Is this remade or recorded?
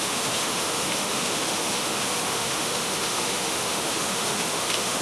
remade